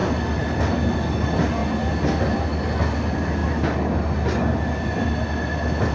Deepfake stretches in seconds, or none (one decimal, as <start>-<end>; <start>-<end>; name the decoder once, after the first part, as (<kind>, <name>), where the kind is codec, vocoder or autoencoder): none